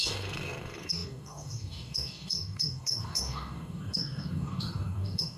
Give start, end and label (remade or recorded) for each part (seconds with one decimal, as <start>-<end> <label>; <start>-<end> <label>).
0.0-5.4 remade